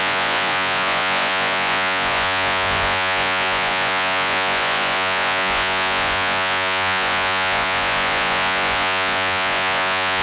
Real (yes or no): no